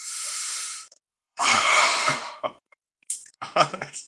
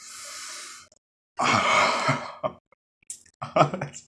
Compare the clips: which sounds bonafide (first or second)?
second